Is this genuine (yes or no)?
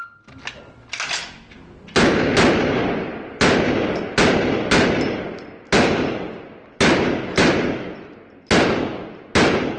yes